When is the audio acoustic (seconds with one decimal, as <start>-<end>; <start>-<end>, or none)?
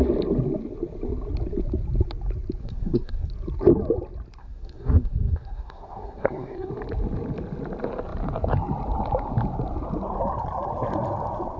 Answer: 0.0-2.6; 3.3-4.4; 6.7-11.6